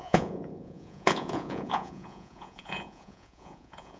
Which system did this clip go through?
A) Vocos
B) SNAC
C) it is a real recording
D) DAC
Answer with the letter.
A